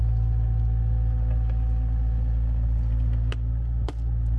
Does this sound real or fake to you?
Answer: real